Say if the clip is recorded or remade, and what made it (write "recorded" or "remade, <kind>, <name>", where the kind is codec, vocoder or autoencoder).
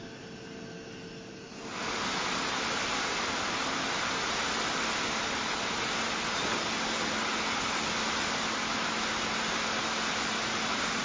recorded